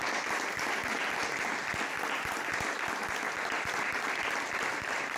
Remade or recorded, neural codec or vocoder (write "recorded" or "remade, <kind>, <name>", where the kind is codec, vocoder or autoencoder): recorded